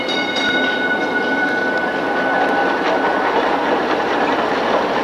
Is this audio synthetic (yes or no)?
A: no